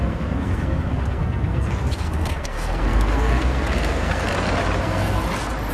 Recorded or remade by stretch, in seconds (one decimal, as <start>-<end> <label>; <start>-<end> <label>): 0.0-4.3 remade; 4.3-4.8 recorded; 4.8-5.2 remade; 5.2-5.7 recorded